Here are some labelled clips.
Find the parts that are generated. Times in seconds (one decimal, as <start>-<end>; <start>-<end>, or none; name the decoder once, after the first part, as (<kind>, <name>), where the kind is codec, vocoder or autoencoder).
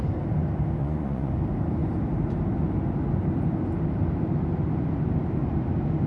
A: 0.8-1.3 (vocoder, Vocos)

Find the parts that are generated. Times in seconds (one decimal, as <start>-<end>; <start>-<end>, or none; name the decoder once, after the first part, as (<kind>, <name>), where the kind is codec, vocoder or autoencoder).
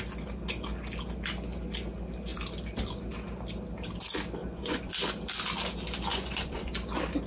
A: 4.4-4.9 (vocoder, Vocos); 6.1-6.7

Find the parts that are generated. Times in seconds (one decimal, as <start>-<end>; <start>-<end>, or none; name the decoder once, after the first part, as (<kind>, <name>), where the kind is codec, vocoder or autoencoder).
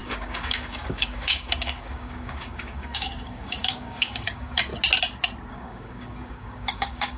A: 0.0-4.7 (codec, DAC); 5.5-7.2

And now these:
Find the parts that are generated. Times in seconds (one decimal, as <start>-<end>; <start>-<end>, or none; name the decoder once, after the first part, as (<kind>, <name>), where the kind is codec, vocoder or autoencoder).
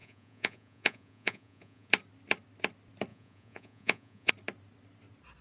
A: 0.0-1.9 (vocoder, Vocos); 3.1-4.3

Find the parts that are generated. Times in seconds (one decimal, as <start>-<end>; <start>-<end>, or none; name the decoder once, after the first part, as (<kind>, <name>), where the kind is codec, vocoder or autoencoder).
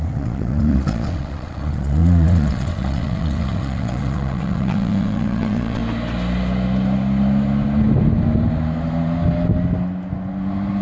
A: 0.0-5.8 (vocoder, WaveNeXt)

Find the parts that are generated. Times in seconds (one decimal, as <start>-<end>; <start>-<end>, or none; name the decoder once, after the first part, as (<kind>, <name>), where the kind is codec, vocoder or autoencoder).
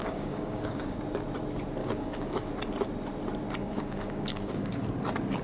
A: 0.0-1.0 (codec, DAC); 1.8-2.5; 3.6-4.8